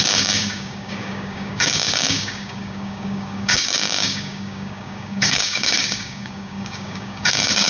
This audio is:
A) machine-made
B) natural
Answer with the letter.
A